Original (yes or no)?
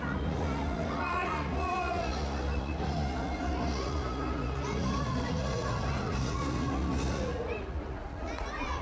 no